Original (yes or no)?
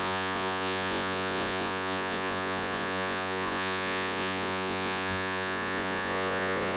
no